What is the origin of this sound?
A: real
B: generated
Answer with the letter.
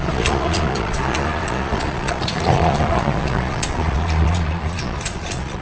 B